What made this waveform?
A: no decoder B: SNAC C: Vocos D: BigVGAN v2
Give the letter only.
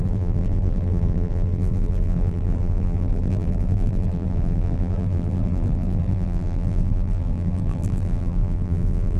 D